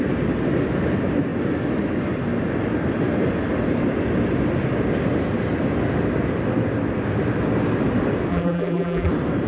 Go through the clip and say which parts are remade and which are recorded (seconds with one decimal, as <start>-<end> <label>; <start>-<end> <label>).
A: 0.0-8.3 recorded; 8.3-9.1 remade; 9.1-9.5 recorded